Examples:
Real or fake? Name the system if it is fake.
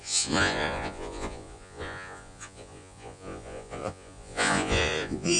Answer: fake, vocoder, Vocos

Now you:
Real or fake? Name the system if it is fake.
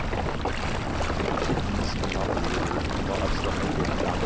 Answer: real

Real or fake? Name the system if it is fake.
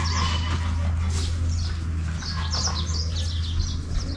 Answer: real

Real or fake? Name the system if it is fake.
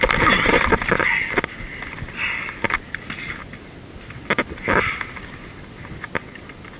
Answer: real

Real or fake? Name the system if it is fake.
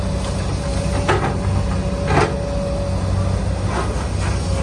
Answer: real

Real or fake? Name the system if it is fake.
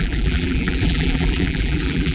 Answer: fake, vocoder, BigVGAN v2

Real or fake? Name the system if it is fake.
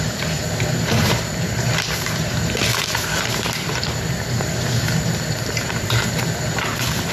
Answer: fake, vocoder, BigVGAN v2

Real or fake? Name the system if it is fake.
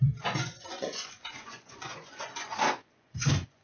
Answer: fake, vocoder, Vocos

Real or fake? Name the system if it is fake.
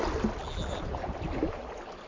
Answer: real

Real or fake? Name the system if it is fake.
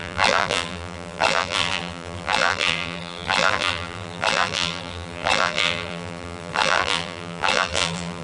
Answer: fake, vocoder, BigVGAN v2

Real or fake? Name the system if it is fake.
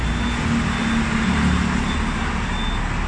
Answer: real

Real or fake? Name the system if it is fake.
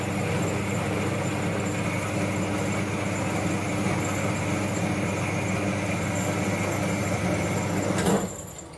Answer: real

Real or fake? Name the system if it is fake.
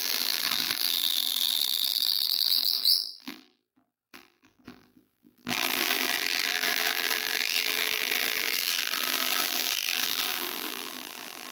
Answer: fake, vocoder, BigVGAN v2